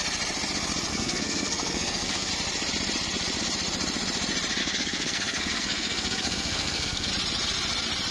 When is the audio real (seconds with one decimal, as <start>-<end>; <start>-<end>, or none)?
0.0-0.9; 2.3-4.6; 7.1-8.1

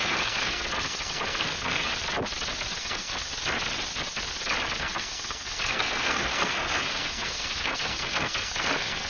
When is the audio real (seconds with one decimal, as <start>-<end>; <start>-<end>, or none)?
1.9-2.8; 3.3-4.8

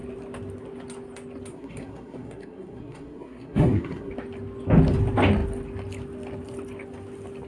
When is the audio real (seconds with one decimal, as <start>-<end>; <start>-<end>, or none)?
0.0-1.5; 4.1-7.5

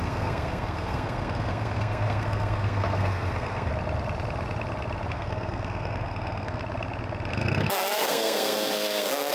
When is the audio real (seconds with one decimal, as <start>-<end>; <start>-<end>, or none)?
3.7-5.1; 6.6-7.3

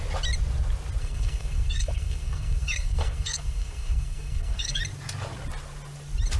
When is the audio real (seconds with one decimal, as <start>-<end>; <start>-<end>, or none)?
0.0-1.0; 4.8-6.4

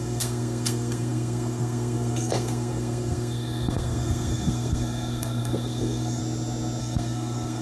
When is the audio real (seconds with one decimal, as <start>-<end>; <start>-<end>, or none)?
6.2-6.8